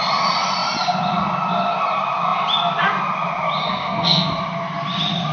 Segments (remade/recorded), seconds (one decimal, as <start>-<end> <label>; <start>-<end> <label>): 0.0-3.6 recorded; 3.6-4.3 remade; 4.3-5.3 recorded